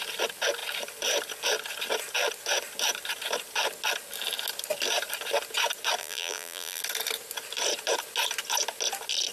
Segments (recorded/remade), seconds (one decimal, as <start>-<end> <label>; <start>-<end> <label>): 0.0-6.0 recorded; 6.0-6.8 remade; 6.8-9.3 recorded